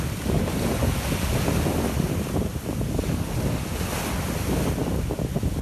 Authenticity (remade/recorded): recorded